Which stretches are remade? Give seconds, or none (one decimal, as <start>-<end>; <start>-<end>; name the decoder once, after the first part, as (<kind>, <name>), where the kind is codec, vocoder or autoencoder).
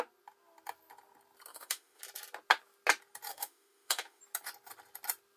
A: 1.5-2.0 (autoencoder, DAC-VAE); 3.3-4.2